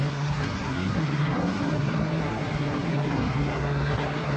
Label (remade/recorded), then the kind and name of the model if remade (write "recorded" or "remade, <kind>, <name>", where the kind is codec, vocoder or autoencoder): remade, codec, SNAC